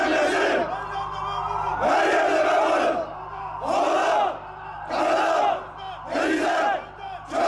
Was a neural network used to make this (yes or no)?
no